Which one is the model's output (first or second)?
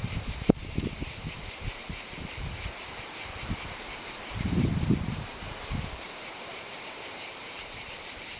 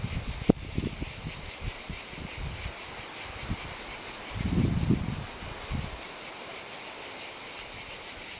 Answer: first